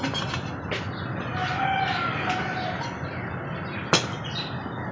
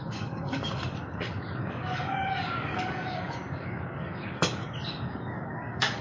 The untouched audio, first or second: first